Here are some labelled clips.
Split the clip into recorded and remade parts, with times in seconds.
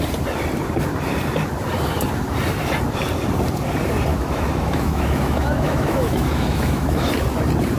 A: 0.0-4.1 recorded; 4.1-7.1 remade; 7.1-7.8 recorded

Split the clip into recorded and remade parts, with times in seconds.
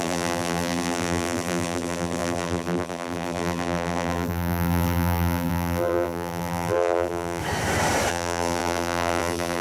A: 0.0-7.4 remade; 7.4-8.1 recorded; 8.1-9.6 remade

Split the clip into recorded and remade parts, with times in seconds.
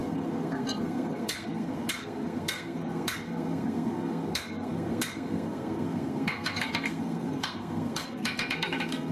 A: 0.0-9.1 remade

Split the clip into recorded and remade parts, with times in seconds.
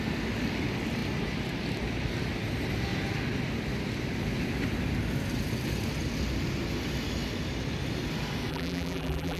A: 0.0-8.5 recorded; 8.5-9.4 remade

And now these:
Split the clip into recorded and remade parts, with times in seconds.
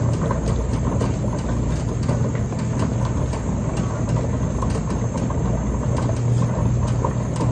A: 0.0-7.5 recorded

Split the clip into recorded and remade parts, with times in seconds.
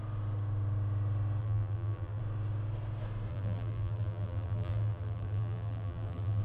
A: 0.0-1.4 recorded; 1.4-2.2 remade; 2.2-3.3 recorded; 3.3-6.4 remade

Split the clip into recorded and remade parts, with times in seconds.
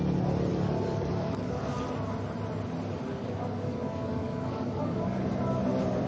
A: 0.0-0.5 recorded; 0.5-1.8 remade; 1.8-3.1 recorded; 3.1-5.3 remade; 5.3-6.1 recorded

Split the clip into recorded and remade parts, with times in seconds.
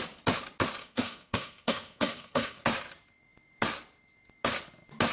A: 0.0-0.8 recorded; 0.8-2.6 remade; 2.6-5.1 recorded